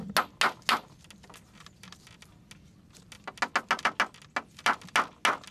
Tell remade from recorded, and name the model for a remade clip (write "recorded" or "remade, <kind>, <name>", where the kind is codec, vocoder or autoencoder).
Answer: recorded